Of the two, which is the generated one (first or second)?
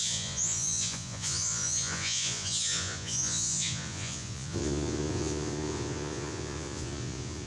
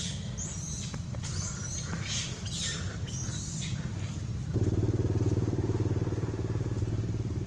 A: first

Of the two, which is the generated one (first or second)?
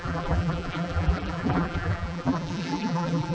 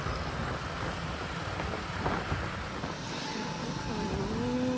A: first